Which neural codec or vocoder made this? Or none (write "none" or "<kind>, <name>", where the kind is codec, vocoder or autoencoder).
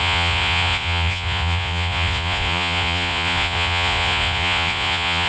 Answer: vocoder, Vocos